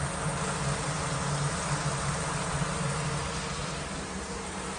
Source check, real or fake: real